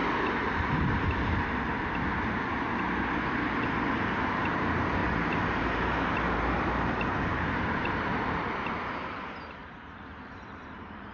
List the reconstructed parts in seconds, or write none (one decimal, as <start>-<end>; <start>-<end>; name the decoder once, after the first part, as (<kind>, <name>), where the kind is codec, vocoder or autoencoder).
5.0-8.4 (vocoder, BigVGAN v2); 9.6-11.1